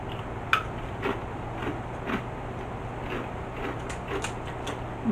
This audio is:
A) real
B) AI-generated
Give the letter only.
A